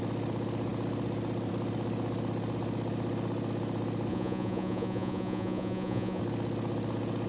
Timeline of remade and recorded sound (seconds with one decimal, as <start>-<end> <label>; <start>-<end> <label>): 0.0-4.1 recorded; 4.1-6.2 remade; 6.2-7.3 recorded